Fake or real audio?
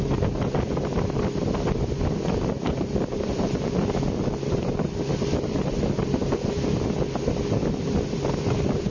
real